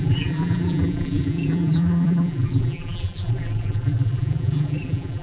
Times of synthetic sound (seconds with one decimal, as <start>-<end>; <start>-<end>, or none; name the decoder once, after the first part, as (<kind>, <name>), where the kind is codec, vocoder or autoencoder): 0.0-5.2 (vocoder, BigVGAN v2)